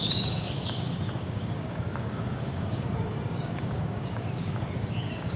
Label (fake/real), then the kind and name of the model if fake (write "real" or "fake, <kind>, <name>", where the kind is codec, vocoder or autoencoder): fake, codec, DAC